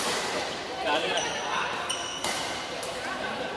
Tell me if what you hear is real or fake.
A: fake